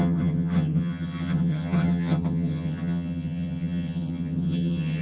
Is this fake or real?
fake